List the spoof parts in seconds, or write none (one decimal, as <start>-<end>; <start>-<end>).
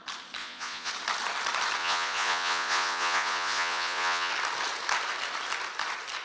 0.4-0.9; 1.8-4.3